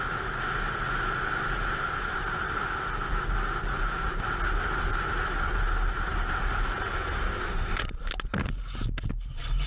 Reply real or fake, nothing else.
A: real